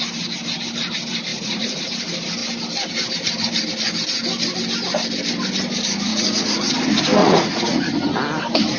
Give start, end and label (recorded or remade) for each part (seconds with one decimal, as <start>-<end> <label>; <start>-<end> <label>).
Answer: 0.0-1.3 recorded; 1.3-1.8 remade; 1.8-6.1 recorded; 6.1-6.7 remade; 6.7-7.2 recorded; 7.2-7.9 remade; 7.9-8.8 recorded